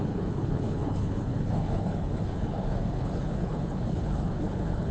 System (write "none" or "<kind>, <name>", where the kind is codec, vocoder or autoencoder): codec, HILCodec